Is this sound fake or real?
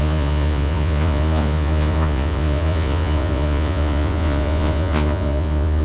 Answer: fake